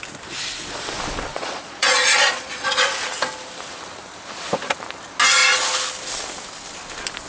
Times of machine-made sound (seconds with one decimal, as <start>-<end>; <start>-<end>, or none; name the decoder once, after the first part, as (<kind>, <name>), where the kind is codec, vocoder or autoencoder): 1.3-2.9 (vocoder, Vocos)